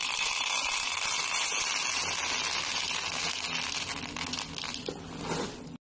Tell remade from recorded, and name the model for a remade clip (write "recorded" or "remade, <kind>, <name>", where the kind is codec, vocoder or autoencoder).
recorded